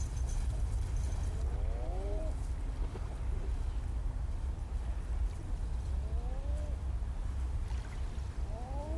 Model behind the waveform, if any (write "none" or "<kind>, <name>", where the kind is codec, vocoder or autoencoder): none